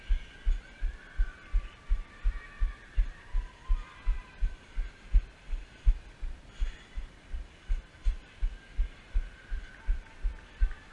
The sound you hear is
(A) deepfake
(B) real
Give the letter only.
B